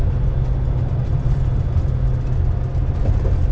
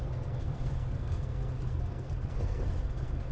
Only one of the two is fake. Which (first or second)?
second